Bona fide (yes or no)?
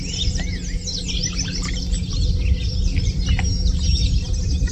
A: yes